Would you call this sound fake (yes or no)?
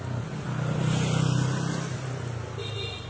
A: no